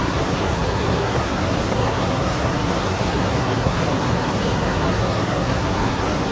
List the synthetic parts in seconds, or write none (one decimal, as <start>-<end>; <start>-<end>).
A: 0.0-6.3